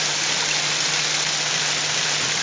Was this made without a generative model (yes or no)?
yes